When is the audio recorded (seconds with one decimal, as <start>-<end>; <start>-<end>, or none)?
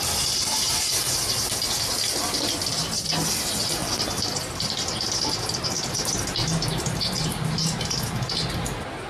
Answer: 0.0-9.1